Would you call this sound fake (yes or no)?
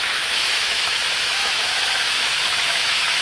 yes